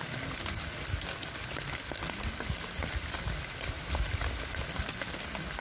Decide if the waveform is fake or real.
real